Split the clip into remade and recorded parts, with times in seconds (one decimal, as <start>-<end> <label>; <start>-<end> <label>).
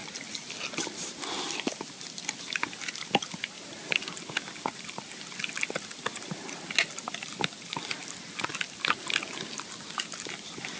0.0-10.8 recorded